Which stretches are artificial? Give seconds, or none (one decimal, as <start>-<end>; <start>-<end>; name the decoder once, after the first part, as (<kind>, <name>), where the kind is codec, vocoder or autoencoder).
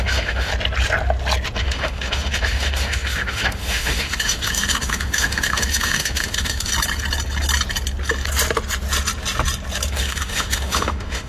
0.0-0.5 (autoencoder, DAC-VAE); 1.6-6.7; 9.9-11.3